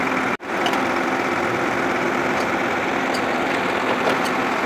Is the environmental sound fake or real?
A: fake